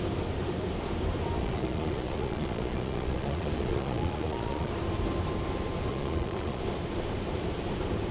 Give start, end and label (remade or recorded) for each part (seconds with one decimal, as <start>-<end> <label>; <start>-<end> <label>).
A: 0.0-1.4 recorded; 1.4-4.7 remade; 4.7-5.9 recorded; 5.9-6.6 remade; 6.6-8.1 recorded